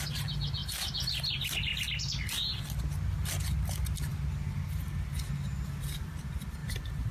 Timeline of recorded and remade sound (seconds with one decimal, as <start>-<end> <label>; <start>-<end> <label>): 0.0-7.1 recorded